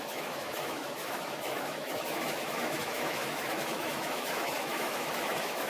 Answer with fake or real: fake